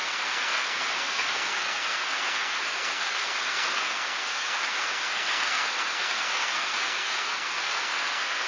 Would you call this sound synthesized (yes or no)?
yes